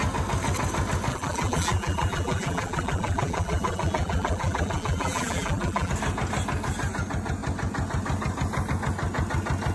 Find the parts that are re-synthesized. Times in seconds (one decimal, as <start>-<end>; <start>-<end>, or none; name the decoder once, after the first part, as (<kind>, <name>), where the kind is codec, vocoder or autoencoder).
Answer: 1.1-5.9 (vocoder, BigVGAN v2)